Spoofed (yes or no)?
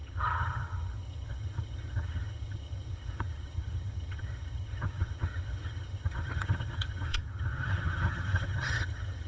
yes